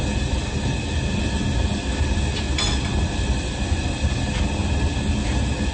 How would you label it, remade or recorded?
recorded